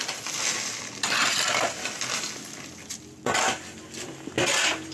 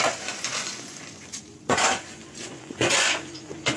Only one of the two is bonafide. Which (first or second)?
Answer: first